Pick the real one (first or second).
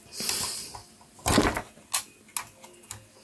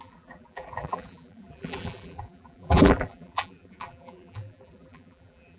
first